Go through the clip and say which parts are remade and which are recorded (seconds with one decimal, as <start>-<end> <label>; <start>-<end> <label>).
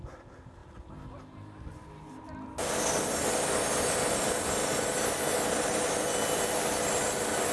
0.0-7.5 recorded